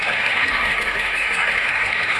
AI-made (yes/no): yes